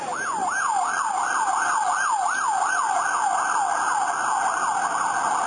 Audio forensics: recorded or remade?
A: recorded